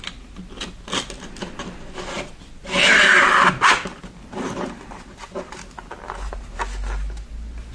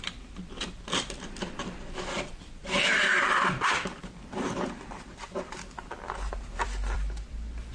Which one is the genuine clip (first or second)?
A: first